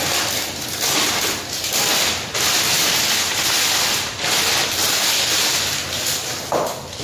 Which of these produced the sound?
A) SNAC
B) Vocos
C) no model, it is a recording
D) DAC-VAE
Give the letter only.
C